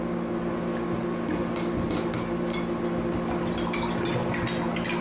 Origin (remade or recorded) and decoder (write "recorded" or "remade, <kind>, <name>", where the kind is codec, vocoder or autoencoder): recorded